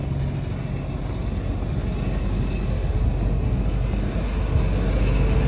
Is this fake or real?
real